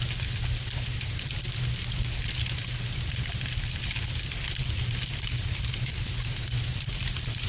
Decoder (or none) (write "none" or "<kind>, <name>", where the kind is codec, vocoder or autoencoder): none